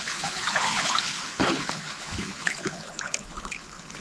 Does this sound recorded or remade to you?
remade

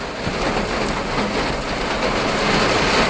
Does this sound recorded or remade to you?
recorded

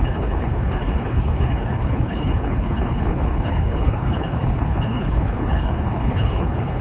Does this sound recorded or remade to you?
remade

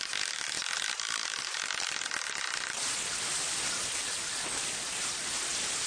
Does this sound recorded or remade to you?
recorded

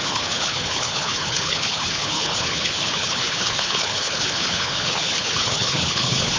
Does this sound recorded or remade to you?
remade